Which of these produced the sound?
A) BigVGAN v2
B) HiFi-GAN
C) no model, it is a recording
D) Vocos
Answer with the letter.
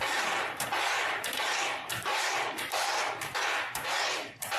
A